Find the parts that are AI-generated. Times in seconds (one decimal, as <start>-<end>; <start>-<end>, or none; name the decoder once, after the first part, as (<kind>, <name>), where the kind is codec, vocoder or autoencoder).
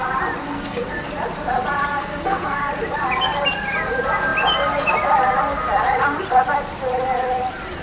0.4-1.1 (codec, SNAC); 1.9-2.7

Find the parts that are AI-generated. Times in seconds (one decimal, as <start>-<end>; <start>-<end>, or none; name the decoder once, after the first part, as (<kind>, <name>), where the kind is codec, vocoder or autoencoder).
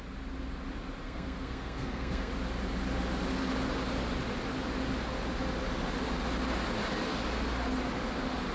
1.0-2.3 (codec, SNAC)